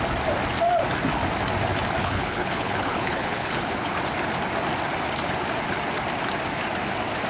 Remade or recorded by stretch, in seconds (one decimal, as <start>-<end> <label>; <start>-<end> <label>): 0.0-2.0 recorded; 2.0-3.9 remade; 3.9-7.3 recorded